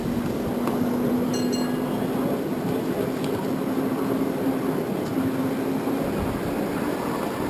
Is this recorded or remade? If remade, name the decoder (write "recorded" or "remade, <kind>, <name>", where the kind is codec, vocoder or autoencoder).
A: recorded